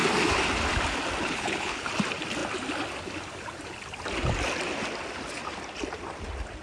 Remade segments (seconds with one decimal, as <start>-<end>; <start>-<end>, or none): 1.2-1.9